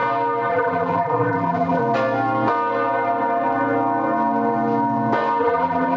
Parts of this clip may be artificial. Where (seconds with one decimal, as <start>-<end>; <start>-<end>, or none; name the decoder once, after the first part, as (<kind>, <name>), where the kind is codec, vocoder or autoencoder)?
0.5-1.8 (vocoder, BigVGAN v2); 5.4-6.0

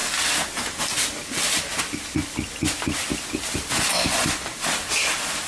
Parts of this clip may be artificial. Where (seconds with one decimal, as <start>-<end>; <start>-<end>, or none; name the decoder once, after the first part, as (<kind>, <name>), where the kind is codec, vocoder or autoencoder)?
none

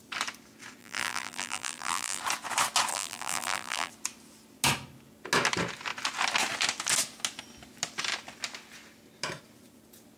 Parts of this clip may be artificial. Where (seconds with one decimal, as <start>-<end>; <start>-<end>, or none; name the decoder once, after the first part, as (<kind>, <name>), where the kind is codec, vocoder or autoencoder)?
0.8-2.2 (vocoder, BigVGAN v2); 2.9-3.9

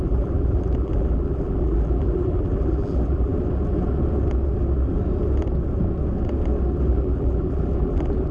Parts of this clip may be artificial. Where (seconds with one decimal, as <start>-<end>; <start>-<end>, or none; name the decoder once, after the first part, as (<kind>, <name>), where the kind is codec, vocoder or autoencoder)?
0.0-3.3 (vocoder, BigVGAN v2); 6.9-8.3

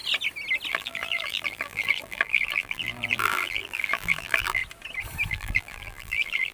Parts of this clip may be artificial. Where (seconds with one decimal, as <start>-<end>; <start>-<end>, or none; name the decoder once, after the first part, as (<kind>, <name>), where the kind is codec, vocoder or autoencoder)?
0.7-4.6 (vocoder, BigVGAN v2); 5.3-6.5

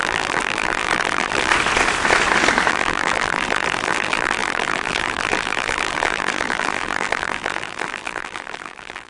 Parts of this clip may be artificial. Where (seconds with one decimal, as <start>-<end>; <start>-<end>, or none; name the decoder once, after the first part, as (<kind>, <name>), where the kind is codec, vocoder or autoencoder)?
0.0-1.5 (vocoder, BigVGAN v2); 2.7-9.1